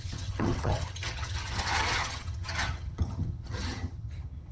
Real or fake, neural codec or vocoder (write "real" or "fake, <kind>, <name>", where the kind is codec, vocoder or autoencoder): fake, vocoder, HiFi-GAN